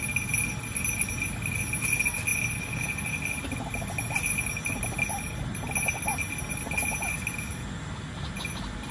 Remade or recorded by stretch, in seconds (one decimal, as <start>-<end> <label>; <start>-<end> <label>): 0.0-8.9 recorded